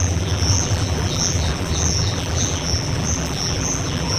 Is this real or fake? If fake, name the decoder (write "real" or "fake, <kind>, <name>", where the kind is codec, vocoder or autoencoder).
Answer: fake, vocoder, BigVGAN v2